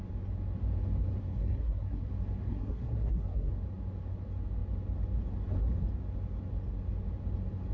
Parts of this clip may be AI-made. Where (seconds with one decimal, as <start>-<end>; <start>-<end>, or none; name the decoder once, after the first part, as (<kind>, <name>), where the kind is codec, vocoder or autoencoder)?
1.2-2.1 (codec, SNAC); 2.5-3.5